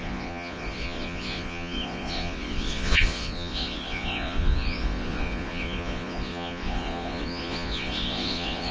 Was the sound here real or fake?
fake